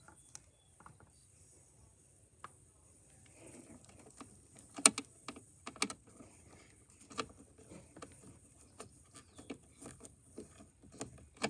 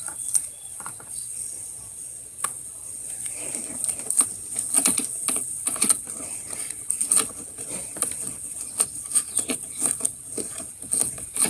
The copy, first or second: second